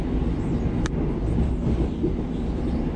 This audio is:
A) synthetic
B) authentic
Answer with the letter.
B